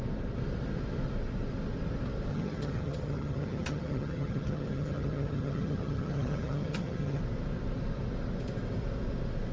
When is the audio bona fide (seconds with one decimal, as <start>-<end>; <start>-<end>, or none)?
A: 0.0-2.3; 7.2-9.5